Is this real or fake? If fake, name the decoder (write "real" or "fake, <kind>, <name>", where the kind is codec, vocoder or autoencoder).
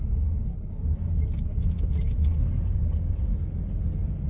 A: real